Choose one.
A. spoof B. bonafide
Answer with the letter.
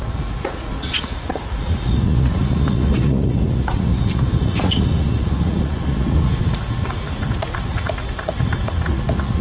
A